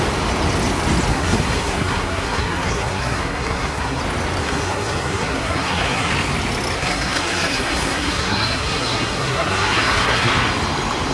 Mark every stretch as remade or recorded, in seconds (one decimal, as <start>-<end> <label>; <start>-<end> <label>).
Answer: 0.0-1.1 recorded; 1.1-4.0 remade; 4.0-4.4 recorded; 4.4-6.1 remade; 6.1-6.8 recorded; 6.8-10.3 remade; 10.3-11.1 recorded